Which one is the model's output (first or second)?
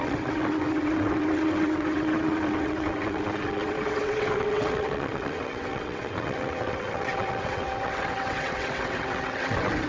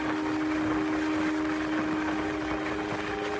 first